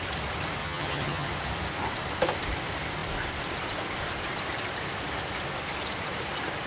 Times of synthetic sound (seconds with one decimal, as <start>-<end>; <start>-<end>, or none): 0.6-1.3